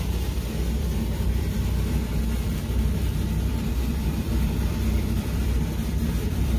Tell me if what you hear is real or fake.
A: fake